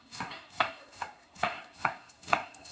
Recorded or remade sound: remade